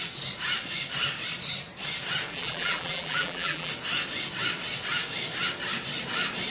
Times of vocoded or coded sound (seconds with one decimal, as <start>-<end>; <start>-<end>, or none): 2.3-3.7